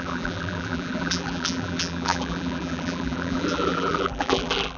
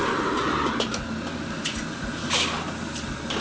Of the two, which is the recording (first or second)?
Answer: second